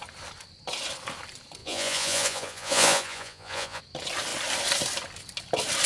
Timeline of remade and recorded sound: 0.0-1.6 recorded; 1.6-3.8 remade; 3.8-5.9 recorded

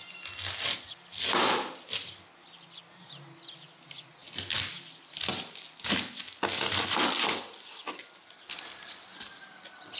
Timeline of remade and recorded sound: 0.0-10.0 recorded